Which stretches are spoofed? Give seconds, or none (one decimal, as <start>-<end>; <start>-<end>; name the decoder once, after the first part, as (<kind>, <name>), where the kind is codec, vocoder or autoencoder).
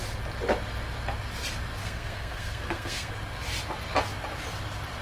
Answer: 1.8-3.1 (codec, SNAC)